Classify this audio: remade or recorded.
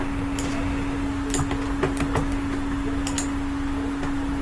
recorded